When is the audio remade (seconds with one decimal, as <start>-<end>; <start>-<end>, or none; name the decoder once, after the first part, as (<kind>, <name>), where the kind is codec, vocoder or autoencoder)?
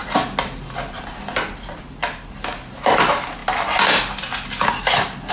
none